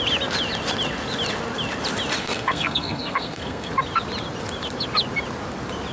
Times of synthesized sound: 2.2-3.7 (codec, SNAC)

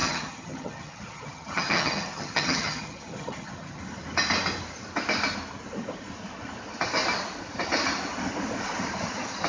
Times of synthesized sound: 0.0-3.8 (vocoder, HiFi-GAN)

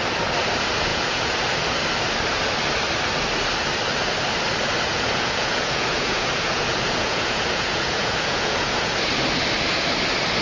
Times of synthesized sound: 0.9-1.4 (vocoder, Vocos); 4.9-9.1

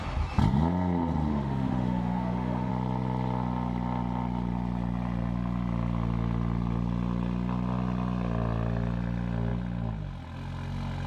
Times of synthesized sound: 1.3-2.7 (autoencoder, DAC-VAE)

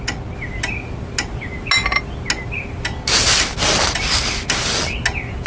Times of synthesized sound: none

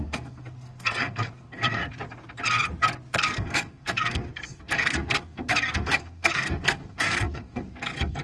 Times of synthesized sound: 0.0-1.8 (codec, SNAC); 3.1-8.2

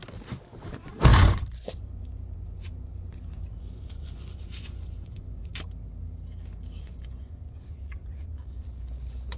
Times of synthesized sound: 0.6-5.5 (vocoder, Vocos); 6.8-9.4

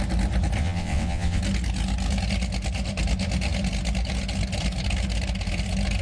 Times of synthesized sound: 0.6-1.4 (vocoder, WaveNeXt)